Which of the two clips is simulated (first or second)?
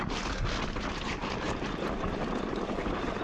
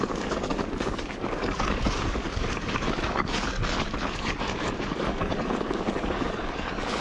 second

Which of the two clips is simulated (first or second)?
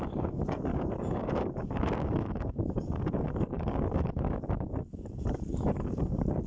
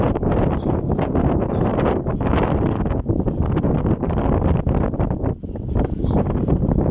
first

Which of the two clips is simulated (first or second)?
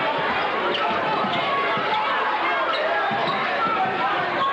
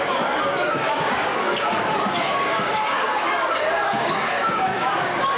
second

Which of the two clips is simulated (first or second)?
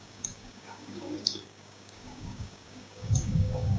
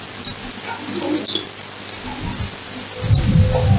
first